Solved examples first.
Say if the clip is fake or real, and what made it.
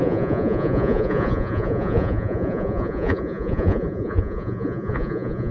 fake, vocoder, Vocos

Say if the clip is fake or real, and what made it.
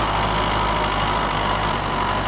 real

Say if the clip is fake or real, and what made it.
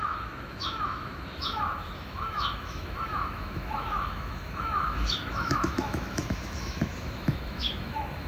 fake, autoencoder, DAC-VAE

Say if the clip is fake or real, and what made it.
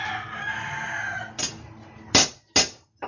real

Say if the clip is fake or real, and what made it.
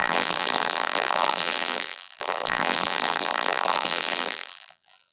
fake, vocoder, BigVGAN v2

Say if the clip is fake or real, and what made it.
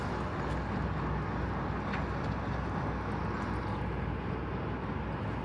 real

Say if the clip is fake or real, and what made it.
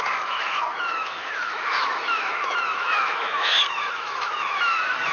fake, autoencoder, DAC-VAE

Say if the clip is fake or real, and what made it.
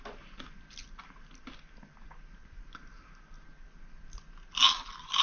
real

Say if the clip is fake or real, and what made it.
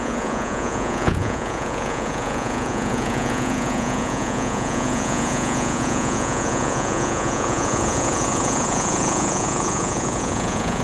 fake, vocoder, Vocos